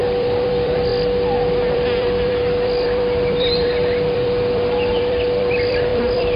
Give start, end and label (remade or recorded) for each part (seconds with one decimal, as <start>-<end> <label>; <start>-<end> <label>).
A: 0.0-0.9 remade; 0.9-1.7 recorded; 1.7-6.4 remade

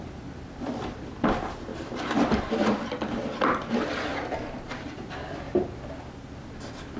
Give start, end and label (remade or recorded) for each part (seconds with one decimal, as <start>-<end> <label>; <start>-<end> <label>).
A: 0.0-1.7 recorded; 1.7-2.5 remade; 2.5-4.1 recorded; 4.1-5.1 remade; 5.1-7.0 recorded

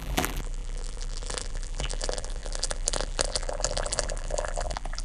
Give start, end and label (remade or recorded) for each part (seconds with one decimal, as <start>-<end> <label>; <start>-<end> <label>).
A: 0.0-5.0 remade

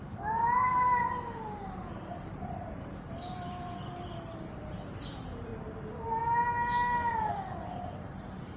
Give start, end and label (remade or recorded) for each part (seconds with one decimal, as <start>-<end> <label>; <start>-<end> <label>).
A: 0.0-5.5 remade; 5.5-7.3 recorded; 7.3-8.6 remade

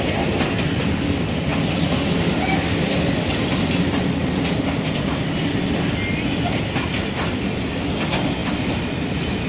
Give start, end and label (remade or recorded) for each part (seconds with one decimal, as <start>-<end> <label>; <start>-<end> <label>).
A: 0.0-9.5 recorded

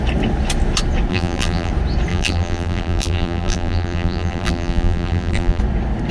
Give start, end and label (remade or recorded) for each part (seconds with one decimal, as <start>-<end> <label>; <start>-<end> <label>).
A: 0.0-1.1 recorded; 1.1-1.7 remade; 1.7-2.1 recorded; 2.1-5.6 remade; 5.6-6.1 recorded

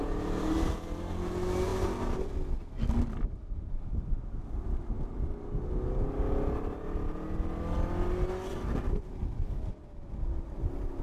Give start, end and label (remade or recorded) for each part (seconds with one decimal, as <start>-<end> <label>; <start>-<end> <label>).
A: 0.0-8.5 recorded; 8.5-9.7 remade; 9.7-11.0 recorded

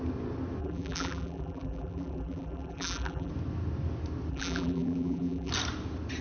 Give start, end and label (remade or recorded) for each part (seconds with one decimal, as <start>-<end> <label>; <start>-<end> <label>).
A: 0.0-0.6 recorded; 0.6-3.3 remade; 3.3-4.3 recorded; 4.3-5.5 remade; 5.5-6.2 recorded